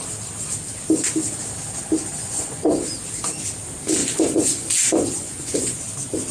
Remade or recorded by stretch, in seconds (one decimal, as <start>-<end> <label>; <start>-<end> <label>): 0.0-2.2 recorded; 2.2-2.7 remade; 2.7-4.0 recorded; 4.0-5.8 remade; 5.8-6.3 recorded